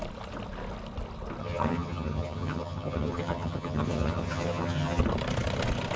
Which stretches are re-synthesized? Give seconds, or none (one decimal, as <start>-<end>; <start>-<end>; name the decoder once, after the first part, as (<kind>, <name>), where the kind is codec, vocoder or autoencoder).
1.4-5.0 (vocoder, HiFi-GAN)

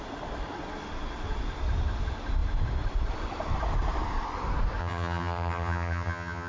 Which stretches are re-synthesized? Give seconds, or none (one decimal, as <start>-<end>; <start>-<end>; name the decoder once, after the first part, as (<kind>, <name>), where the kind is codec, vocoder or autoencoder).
4.8-6.5 (vocoder, HiFi-GAN)